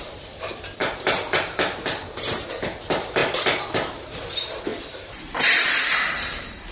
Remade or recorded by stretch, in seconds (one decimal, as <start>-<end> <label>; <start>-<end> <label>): 0.0-0.8 remade; 0.8-1.4 recorded; 1.4-6.7 remade